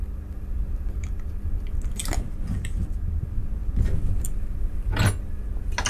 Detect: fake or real real